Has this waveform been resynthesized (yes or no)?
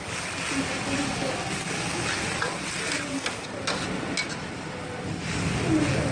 no